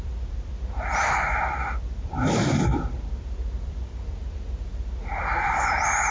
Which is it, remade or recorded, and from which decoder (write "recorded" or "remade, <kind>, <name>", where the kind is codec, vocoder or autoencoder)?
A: remade, vocoder, BigVGAN v2